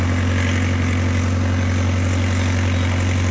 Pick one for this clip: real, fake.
real